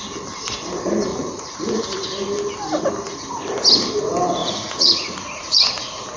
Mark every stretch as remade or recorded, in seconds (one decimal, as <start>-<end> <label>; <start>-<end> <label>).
0.0-1.1 recorded; 1.1-1.8 remade; 1.8-4.4 recorded; 4.4-5.6 remade; 5.6-6.2 recorded